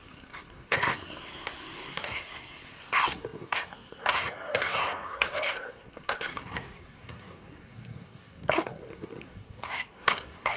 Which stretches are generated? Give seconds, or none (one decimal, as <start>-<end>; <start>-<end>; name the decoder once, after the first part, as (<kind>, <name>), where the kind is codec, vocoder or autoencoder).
0.0-10.6 (codec, SNAC)